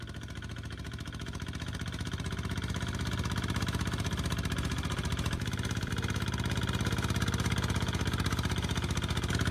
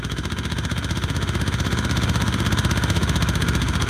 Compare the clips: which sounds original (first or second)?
first